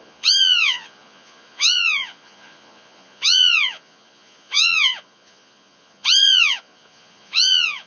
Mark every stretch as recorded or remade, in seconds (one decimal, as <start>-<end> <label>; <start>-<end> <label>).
0.0-7.9 remade